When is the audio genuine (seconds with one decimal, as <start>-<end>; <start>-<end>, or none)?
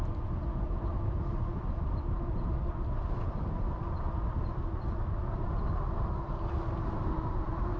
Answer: 0.0-7.8